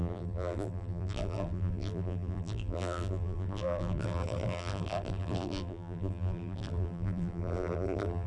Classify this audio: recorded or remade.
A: remade